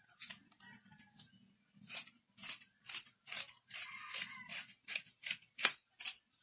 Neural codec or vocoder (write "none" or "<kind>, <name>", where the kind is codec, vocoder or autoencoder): none